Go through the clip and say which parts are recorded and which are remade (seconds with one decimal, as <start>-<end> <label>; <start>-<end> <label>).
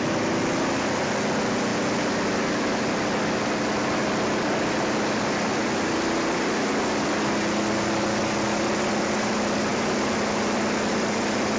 0.0-11.6 recorded